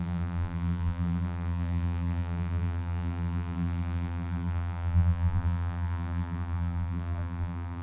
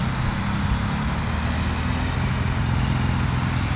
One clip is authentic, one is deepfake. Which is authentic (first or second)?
second